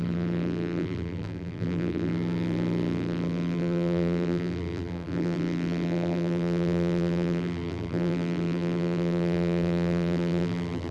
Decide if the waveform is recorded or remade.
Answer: remade